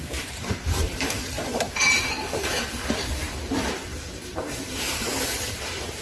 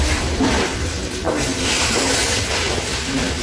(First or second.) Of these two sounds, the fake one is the first